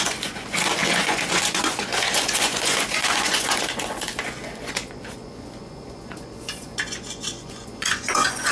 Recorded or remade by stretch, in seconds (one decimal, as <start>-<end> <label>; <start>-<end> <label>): 0.0-8.5 remade